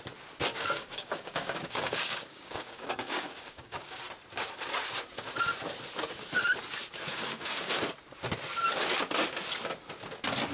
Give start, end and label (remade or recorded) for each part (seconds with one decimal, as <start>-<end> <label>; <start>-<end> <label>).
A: 0.0-0.5 recorded; 0.5-4.0 remade; 4.0-7.1 recorded; 7.1-7.7 remade; 7.7-10.5 recorded